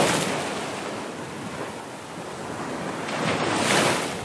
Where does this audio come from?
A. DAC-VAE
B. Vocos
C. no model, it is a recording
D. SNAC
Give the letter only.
C